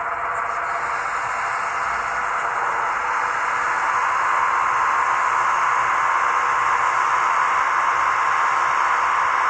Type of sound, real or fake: real